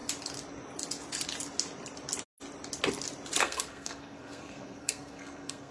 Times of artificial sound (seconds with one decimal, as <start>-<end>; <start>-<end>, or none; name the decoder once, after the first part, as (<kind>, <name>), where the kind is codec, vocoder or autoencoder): 3.4-5.7 (codec, SNAC)